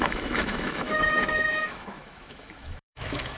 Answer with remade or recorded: remade